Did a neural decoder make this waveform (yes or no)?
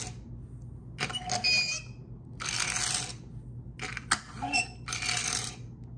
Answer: no